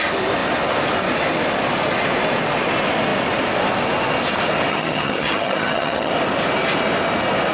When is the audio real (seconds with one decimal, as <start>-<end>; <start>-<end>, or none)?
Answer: 0.0-4.7; 6.1-7.5